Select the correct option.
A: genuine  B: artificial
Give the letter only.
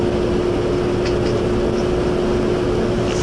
A